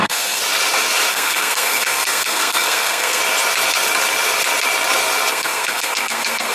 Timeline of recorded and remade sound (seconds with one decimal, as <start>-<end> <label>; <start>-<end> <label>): 0.0-0.4 remade; 0.4-1.1 recorded; 1.1-3.2 remade; 3.2-5.3 recorded; 5.3-6.5 remade